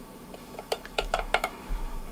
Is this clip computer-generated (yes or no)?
yes